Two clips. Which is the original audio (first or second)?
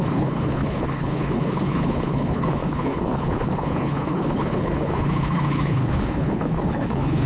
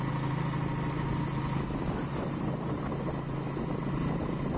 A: second